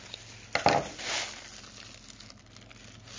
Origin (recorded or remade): recorded